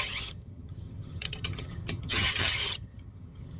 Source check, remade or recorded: remade